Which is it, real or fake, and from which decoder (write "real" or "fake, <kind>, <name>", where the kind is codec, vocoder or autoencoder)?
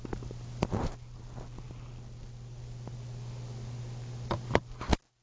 real